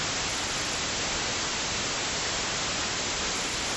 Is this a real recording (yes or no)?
yes